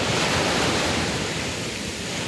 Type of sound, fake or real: fake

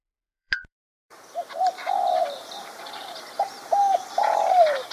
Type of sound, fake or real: fake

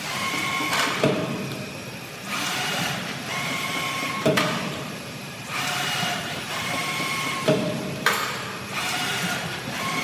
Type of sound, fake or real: fake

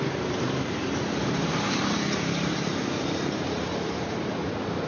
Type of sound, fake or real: fake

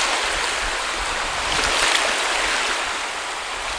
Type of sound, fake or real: real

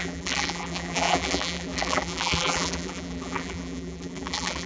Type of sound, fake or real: fake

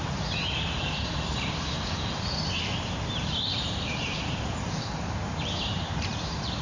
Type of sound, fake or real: fake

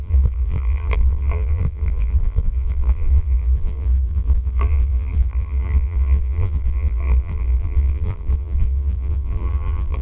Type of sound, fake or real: fake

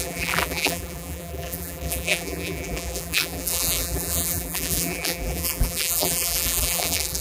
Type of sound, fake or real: fake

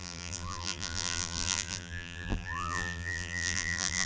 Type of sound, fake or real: fake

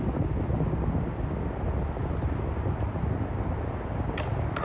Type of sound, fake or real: real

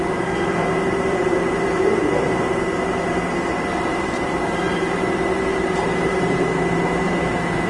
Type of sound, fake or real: fake